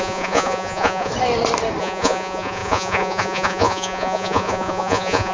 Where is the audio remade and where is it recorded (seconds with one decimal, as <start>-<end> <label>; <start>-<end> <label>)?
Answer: 0.0-1.1 remade; 1.1-1.8 recorded; 1.8-5.3 remade